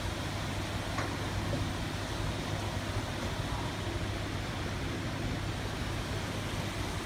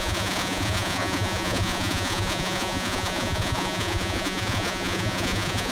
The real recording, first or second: first